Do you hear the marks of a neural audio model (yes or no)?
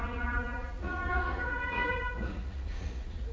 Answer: yes